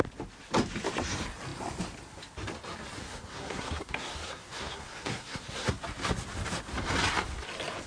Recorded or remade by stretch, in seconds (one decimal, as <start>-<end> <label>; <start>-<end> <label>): 0.0-3.0 recorded; 3.0-5.8 remade; 5.8-7.9 recorded